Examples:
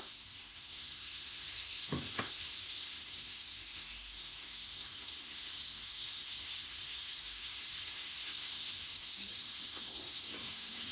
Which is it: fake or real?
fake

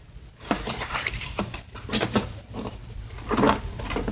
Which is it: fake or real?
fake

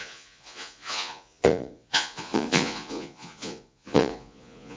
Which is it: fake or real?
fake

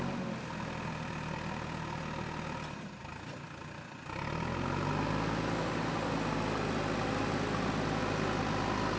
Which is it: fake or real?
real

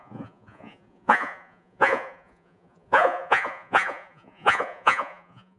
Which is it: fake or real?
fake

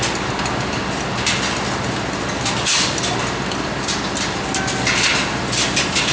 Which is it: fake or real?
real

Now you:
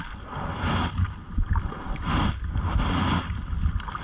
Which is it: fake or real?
real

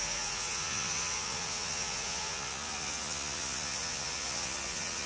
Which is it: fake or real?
fake